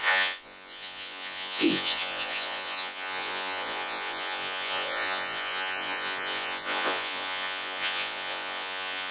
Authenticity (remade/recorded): remade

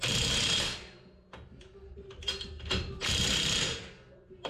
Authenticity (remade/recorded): recorded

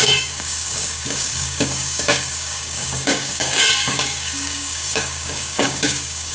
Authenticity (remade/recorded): remade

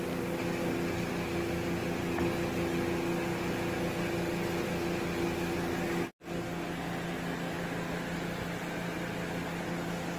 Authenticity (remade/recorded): recorded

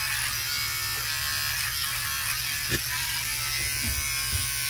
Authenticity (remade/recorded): recorded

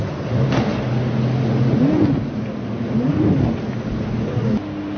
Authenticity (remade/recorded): recorded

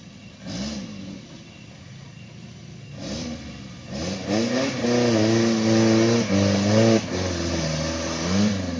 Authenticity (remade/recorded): recorded